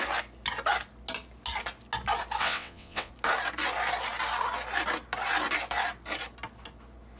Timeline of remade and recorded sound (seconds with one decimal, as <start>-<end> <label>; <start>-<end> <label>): 0.0-2.4 recorded; 2.4-3.1 remade; 3.1-7.2 recorded

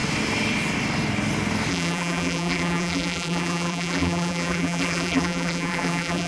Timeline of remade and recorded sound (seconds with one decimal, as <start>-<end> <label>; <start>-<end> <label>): 0.0-1.7 recorded; 1.7-6.3 remade

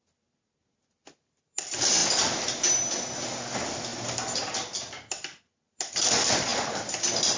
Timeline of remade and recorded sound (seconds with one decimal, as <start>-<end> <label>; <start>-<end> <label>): 0.0-7.4 recorded

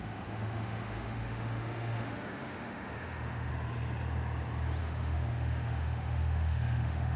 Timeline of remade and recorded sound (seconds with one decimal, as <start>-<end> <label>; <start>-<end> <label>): 0.0-3.5 remade; 3.5-4.8 recorded; 4.8-7.2 remade